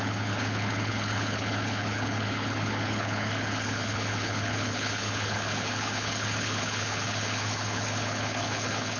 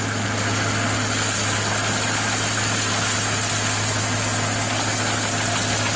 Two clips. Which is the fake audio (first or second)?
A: first